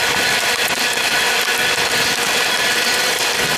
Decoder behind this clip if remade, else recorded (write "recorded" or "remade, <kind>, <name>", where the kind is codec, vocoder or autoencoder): recorded